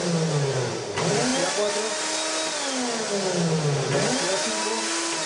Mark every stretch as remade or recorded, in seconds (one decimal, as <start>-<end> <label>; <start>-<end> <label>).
0.0-5.3 recorded